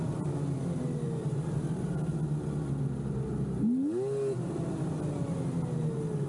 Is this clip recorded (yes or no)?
yes